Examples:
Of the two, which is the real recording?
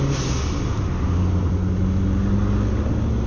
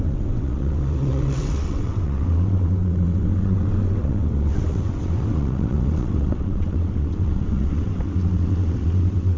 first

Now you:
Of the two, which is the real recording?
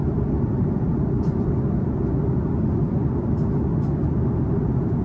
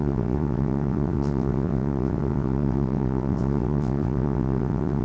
first